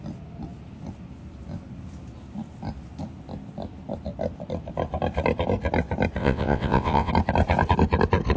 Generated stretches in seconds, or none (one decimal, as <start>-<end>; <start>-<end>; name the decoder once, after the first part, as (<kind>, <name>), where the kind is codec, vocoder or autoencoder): 6.2-7.1 (vocoder, WaveNeXt)